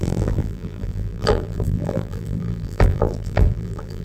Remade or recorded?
remade